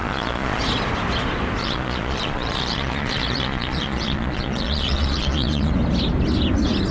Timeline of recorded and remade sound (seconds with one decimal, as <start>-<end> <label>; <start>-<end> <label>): 0.0-0.6 remade; 0.6-1.6 recorded; 1.6-5.7 remade; 5.7-6.9 recorded